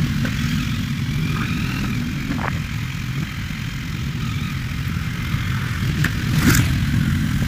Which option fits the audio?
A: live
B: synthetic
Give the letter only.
A